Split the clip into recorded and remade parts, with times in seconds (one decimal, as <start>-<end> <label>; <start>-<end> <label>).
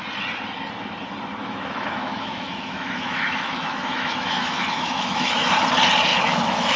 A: 0.0-1.4 recorded; 1.4-5.5 remade; 5.5-6.1 recorded; 6.1-6.8 remade